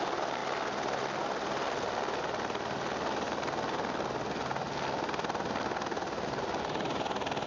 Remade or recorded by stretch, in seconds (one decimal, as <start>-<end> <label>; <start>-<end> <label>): 0.0-7.5 recorded